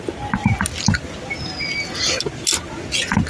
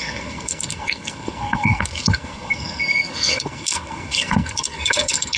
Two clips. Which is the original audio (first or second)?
first